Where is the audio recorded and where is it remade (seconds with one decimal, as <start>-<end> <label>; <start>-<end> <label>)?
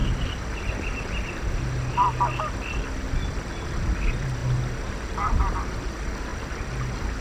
0.0-7.2 recorded